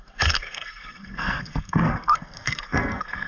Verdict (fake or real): fake